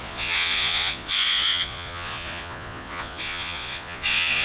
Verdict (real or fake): fake